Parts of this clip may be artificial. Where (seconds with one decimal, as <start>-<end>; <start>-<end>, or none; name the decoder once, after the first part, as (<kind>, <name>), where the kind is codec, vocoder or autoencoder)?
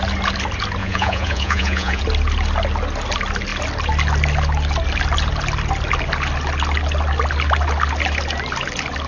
0.8-2.0 (vocoder, Vocos)